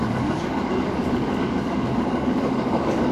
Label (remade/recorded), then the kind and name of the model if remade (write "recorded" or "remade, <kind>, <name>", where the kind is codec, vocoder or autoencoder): remade, codec, DAC